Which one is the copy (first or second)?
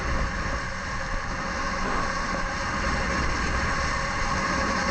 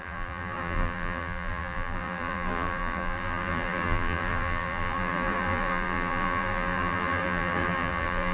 second